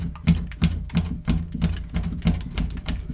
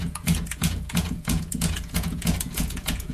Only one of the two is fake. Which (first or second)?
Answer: second